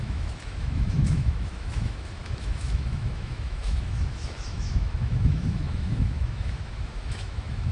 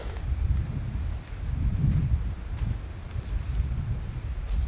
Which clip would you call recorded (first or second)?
second